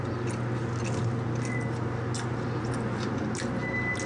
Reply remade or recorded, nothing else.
recorded